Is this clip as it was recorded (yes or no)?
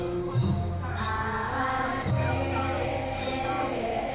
no